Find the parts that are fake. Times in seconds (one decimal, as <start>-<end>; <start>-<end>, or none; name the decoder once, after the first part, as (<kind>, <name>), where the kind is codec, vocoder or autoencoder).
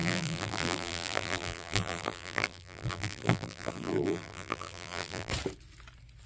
0.0-5.3 (vocoder, BigVGAN v2)